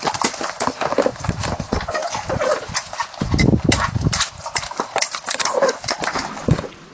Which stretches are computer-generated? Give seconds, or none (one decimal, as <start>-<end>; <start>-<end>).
none